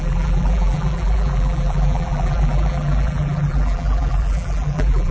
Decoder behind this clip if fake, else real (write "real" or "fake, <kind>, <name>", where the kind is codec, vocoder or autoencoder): fake, vocoder, BigVGAN v2